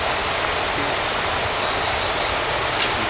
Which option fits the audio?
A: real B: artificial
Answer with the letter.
A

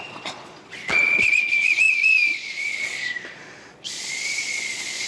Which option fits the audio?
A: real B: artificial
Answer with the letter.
B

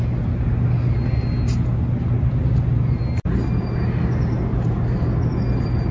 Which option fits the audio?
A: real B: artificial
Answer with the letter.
A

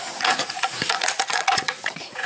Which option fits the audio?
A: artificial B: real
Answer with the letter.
A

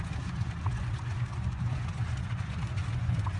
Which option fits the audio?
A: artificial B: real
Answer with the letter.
A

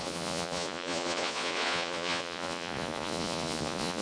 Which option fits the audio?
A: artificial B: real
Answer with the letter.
A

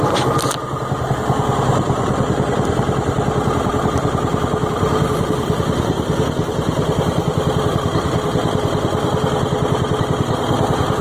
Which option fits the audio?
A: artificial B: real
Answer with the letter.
B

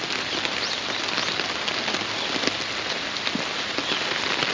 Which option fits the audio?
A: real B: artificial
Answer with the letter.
A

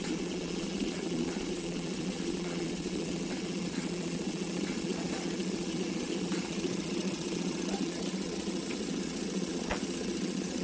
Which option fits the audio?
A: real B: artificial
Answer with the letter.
B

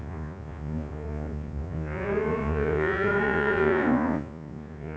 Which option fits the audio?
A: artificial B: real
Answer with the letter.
A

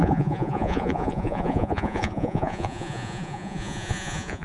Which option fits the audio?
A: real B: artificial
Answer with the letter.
B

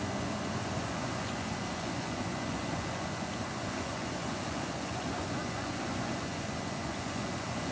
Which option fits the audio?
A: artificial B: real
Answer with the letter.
A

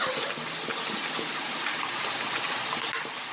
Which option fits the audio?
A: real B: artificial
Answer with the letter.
A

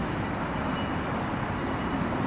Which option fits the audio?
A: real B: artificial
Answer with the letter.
A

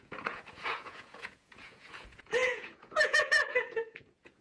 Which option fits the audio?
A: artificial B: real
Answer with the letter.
A